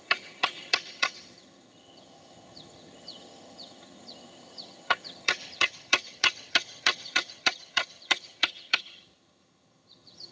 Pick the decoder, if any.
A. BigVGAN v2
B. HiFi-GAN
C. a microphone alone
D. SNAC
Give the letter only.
B